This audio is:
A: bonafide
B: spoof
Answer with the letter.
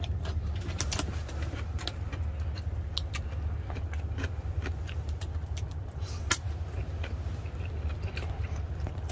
A